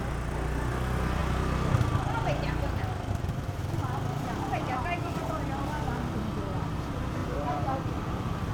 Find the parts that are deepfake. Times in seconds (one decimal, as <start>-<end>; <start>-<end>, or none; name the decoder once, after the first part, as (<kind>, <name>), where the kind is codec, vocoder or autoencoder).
3.8-5.5 (vocoder, BigVGAN v2); 7.2-8.5